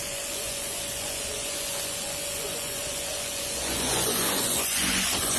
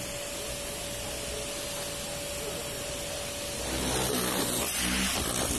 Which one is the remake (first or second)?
first